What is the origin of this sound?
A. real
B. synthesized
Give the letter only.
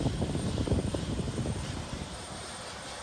B